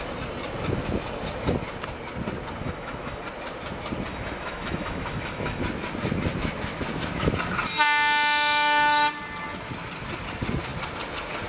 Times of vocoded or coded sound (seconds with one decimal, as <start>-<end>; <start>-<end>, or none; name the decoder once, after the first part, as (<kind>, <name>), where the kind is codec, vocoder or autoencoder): 2.6-3.2 (autoencoder, DAC-VAE); 4.1-5.6